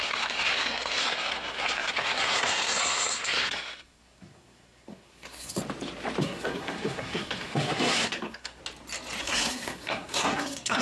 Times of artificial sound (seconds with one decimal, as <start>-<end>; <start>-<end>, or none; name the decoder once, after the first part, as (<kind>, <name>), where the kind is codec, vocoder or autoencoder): 0.0-5.6 (codec, SNAC); 6.2-8.6; 9.2-10.8